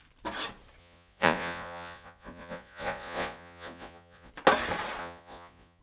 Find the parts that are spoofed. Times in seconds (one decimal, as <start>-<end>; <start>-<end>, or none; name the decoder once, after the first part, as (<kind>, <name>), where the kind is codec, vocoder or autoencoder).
0.8-4.3 (vocoder, Vocos); 5.0-5.8